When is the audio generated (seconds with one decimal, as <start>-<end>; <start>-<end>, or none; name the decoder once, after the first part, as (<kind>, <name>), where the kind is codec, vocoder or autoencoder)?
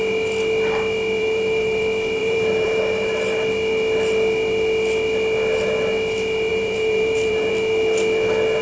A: 1.2-1.8 (vocoder, BigVGAN v2); 2.2-2.8; 6.5-7.5